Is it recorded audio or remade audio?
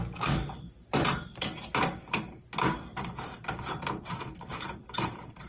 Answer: remade